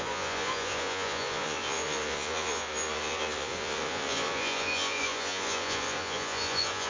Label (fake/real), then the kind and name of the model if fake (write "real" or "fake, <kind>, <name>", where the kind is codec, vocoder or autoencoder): fake, vocoder, Vocos